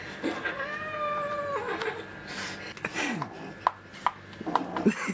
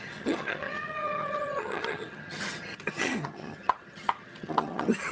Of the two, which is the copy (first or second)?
second